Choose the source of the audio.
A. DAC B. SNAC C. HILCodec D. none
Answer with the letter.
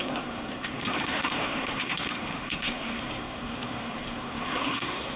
B